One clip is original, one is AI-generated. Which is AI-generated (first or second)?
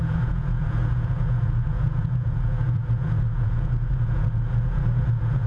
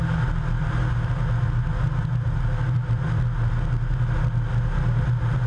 first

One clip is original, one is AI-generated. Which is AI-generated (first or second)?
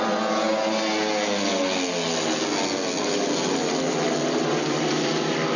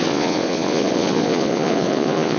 second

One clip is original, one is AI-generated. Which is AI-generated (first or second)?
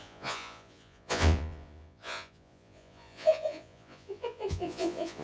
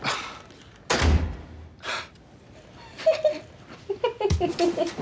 first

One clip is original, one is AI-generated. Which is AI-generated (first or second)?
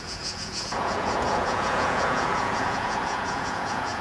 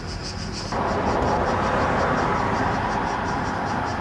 first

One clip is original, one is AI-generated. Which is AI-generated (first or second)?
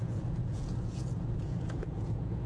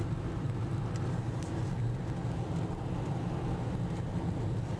first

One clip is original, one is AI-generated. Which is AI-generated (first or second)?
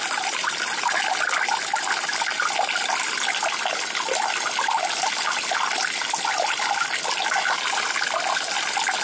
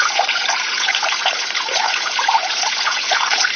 second